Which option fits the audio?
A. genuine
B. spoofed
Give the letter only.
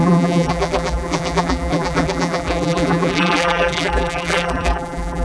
B